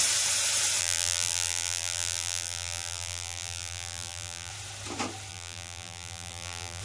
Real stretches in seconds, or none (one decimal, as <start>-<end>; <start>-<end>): 0.0-0.8; 4.5-5.3